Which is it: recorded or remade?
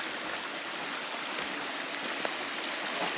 recorded